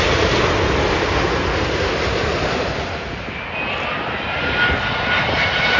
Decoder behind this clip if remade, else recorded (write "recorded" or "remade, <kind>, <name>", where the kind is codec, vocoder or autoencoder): recorded